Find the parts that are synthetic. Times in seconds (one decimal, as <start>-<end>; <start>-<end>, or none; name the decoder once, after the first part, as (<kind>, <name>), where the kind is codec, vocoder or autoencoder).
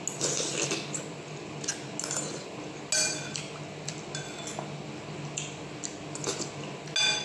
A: none